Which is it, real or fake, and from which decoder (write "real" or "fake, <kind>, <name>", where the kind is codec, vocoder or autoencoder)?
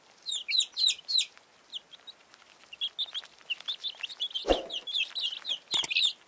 real